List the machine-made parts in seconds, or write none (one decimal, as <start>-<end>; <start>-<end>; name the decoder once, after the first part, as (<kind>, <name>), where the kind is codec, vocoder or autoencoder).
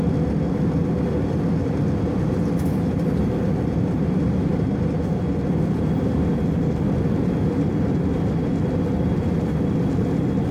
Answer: none